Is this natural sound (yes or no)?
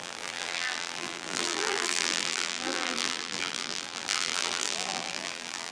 no